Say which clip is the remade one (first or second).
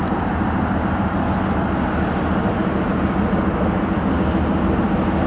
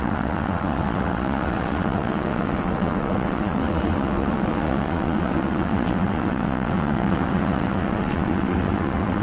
second